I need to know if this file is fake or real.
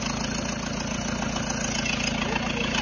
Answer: real